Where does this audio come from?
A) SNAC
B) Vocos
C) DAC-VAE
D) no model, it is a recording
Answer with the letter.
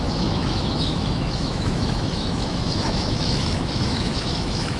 C